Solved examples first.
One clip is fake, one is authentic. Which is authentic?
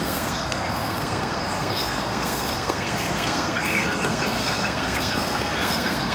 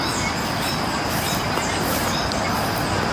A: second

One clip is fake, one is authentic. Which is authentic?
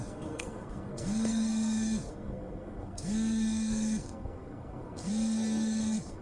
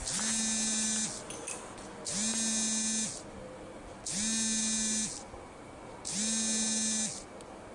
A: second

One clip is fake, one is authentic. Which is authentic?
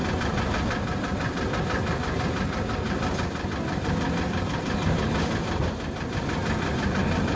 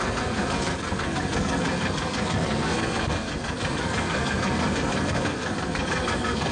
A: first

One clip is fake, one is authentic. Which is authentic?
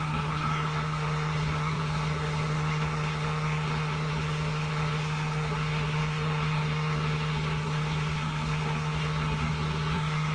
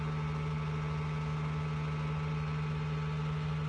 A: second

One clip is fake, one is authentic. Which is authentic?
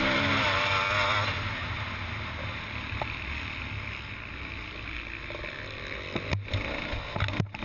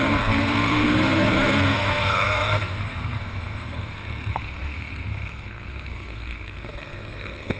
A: first